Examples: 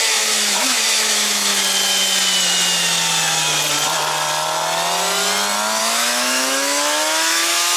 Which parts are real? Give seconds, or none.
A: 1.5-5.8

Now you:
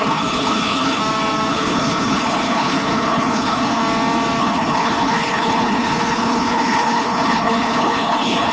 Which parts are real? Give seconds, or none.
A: 1.0-1.5; 3.8-4.4

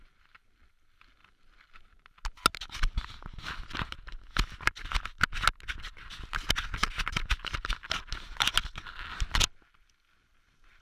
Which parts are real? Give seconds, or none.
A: 0.0-10.8

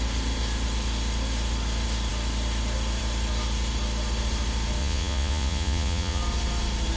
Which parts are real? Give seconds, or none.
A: 0.0-4.8; 6.2-7.0

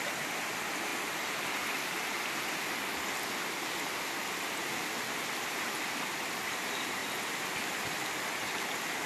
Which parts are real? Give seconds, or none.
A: 0.0-9.1

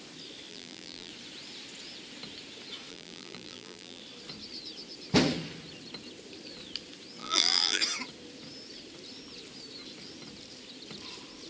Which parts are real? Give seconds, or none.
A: 0.0-0.5; 1.1-2.9; 4.0-7.2; 7.8-11.5